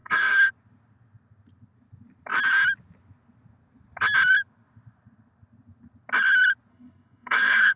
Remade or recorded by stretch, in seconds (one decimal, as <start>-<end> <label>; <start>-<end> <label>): 0.0-0.5 remade; 0.5-6.7 recorded; 6.7-7.8 remade